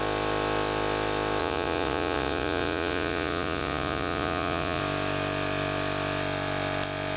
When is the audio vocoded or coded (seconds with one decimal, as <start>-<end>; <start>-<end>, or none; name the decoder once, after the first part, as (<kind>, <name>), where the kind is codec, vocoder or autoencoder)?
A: 1.4-4.8 (vocoder, Vocos)